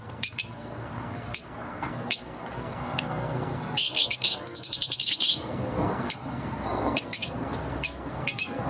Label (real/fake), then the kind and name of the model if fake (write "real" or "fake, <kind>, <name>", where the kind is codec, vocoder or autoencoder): fake, codec, SNAC